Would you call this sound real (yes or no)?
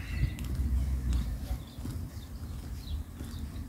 yes